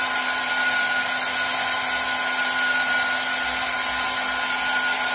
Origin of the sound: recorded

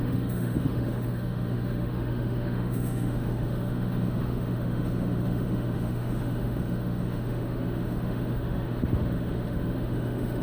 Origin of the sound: remade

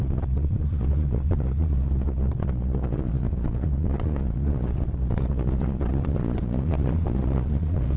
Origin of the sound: remade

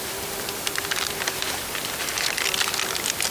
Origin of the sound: recorded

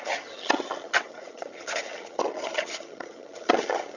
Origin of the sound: remade